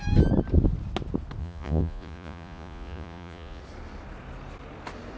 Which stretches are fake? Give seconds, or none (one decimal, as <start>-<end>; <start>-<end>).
1.4-3.6